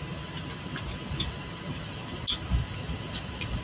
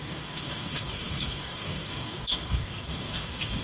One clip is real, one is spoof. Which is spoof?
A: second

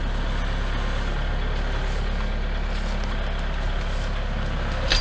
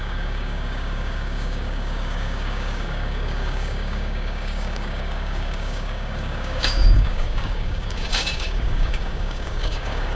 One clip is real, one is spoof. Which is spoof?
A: second